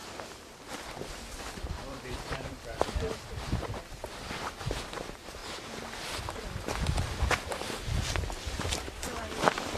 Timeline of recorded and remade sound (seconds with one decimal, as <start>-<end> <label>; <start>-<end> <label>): 0.0-0.6 recorded; 0.6-5.4 remade; 5.4-6.9 recorded; 6.9-9.8 remade

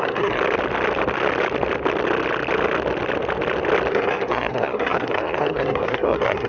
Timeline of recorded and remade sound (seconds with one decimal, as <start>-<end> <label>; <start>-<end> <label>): 0.0-0.4 remade; 0.4-3.9 recorded; 3.9-6.5 remade

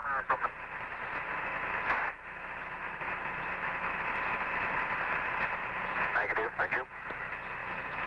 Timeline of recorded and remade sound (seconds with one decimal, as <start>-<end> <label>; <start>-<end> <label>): 0.0-5.6 recorded; 5.6-7.1 remade; 7.1-7.6 recorded; 7.6-8.1 remade

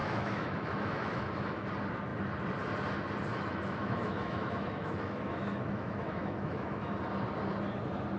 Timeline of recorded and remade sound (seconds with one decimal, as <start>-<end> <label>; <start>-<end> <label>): 0.0-1.7 remade; 1.7-3.3 recorded; 3.3-7.0 remade; 7.0-8.2 recorded

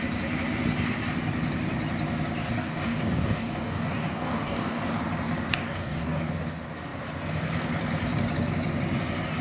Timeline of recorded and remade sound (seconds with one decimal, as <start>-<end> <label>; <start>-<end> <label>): 0.0-2.4 recorded; 2.4-5.0 remade; 5.0-5.5 recorded; 5.5-6.3 remade; 6.3-9.4 recorded

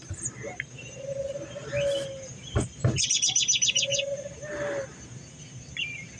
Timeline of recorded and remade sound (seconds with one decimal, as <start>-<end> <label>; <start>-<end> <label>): 0.0-6.2 recorded

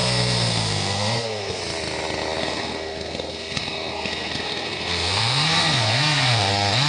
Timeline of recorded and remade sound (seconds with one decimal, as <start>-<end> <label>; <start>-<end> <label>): 0.0-1.6 remade; 1.6-2.4 recorded; 2.4-6.5 remade; 6.5-6.9 recorded

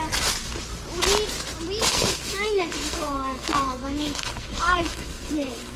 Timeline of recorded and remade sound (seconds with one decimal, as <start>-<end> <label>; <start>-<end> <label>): 0.0-1.9 recorded; 1.9-5.8 remade